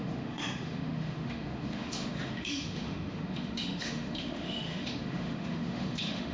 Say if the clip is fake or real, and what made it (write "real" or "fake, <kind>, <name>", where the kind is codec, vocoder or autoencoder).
fake, autoencoder, DAC-VAE